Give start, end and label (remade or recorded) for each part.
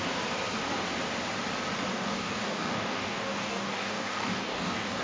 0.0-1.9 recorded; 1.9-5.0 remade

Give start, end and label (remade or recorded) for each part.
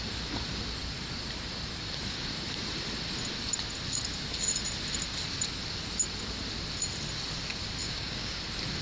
0.0-7.8 recorded; 7.8-8.4 remade; 8.4-8.8 recorded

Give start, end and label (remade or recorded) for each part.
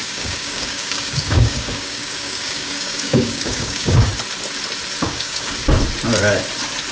0.0-4.1 remade; 4.1-5.0 recorded; 5.0-5.5 remade; 5.5-6.9 recorded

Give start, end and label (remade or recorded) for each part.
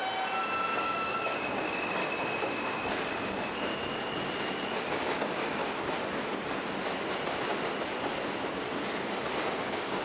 0.0-0.8 recorded; 0.8-2.0 remade; 2.0-4.9 recorded; 4.9-5.6 remade; 5.6-9.6 recorded; 9.6-10.0 remade